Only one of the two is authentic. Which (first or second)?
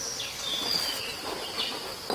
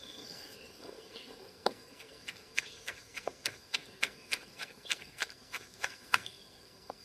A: first